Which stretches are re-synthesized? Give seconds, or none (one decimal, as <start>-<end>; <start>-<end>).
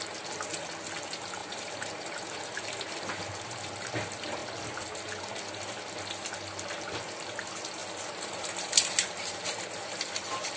1.4-2.5